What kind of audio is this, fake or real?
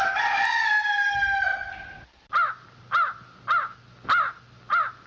real